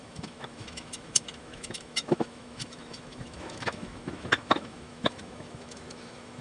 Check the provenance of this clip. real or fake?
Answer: fake